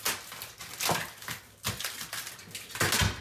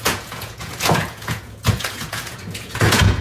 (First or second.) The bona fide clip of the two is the first